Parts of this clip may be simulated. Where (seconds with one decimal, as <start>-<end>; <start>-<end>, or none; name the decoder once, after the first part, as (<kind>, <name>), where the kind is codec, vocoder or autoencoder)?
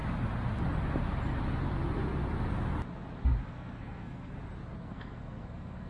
3.5-4.3 (codec, SNAC); 4.8-5.9